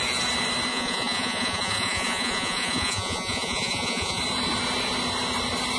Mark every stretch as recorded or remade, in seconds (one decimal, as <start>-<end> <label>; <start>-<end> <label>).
0.0-0.7 recorded; 0.7-4.2 remade; 4.2-5.8 recorded